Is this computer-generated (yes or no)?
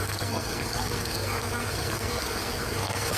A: yes